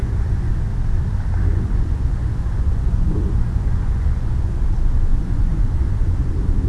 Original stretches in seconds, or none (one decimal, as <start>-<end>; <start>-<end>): 0.5-1.5; 4.6-5.1; 6.3-6.7